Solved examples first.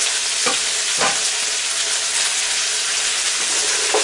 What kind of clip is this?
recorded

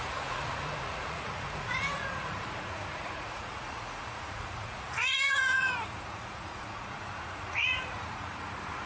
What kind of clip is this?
remade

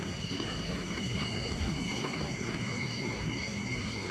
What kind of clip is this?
remade